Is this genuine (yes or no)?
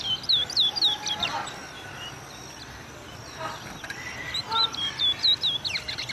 yes